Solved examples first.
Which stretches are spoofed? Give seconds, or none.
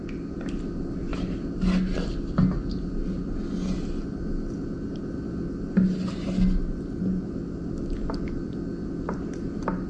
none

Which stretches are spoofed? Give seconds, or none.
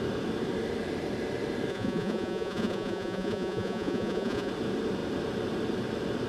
1.7-4.5 (vocoder, Vocos)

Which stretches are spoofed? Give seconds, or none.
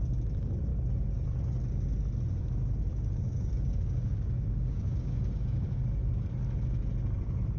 2.9-5.8 (codec, DAC)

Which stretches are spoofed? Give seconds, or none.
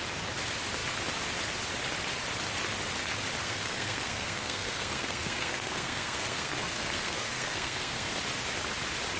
3.4-8.1 (codec, SNAC)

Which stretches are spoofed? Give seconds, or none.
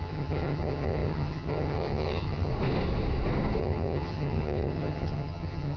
0.0-2.5 (vocoder, HiFi-GAN); 3.6-5.8